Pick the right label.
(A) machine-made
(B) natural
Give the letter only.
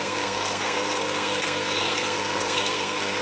A